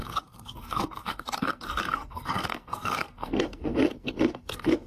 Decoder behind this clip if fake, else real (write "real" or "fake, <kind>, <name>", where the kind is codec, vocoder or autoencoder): fake, codec, SNAC